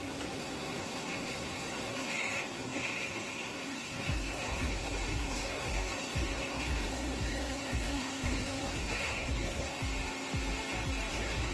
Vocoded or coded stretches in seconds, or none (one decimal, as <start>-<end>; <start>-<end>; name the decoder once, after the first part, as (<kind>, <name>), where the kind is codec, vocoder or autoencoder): 0.0-9.8 (codec, SNAC); 11.1-11.5